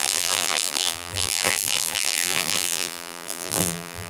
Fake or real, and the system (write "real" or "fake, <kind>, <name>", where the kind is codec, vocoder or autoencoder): fake, vocoder, BigVGAN v2